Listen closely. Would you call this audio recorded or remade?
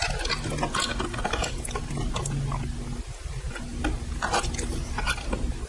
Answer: recorded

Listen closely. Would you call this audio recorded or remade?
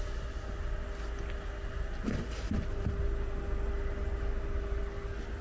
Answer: recorded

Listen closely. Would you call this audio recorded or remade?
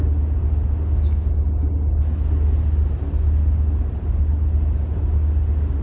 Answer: recorded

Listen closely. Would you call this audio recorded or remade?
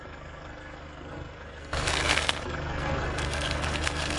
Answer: remade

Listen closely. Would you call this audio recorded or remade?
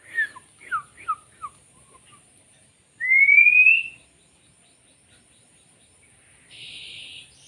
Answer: recorded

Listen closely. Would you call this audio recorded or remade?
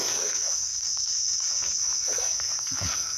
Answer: remade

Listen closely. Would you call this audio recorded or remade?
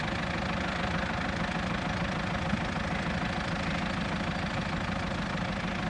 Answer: recorded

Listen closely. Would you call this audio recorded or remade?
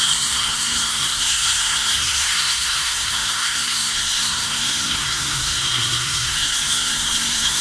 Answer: remade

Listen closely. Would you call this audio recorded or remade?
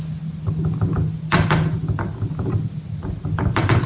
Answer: recorded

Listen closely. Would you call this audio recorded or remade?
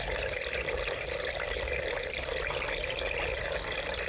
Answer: recorded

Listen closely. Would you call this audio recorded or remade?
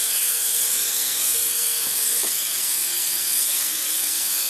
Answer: remade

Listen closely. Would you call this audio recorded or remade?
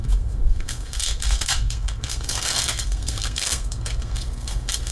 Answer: remade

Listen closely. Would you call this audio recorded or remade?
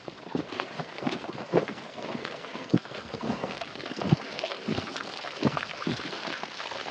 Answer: remade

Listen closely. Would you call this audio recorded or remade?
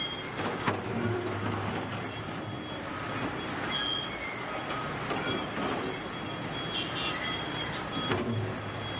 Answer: recorded